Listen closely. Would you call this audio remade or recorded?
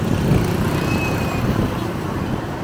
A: recorded